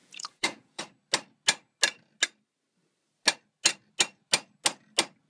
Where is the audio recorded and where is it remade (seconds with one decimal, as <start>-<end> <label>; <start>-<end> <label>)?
0.0-0.8 remade; 0.8-5.3 recorded